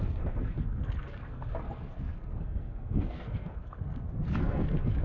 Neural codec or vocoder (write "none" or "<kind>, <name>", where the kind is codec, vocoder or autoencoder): codec, SNAC